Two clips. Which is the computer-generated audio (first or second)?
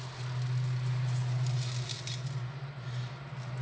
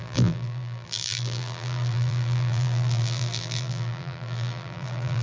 second